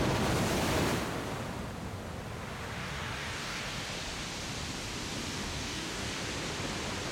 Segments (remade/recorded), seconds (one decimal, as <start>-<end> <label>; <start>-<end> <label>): 0.0-2.8 recorded; 2.8-3.6 remade; 3.6-5.4 recorded; 5.4-6.1 remade; 6.1-7.1 recorded